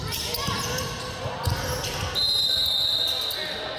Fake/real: real